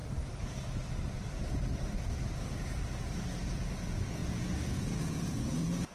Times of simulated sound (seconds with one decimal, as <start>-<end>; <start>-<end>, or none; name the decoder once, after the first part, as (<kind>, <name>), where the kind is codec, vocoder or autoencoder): 3.5-4.2 (vocoder, Vocos); 4.7-5.9